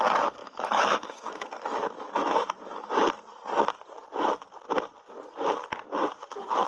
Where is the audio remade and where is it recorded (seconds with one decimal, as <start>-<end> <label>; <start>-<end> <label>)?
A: 0.0-0.4 recorded; 0.4-3.1 remade; 3.1-6.7 recorded